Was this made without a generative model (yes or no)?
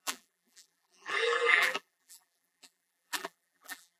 no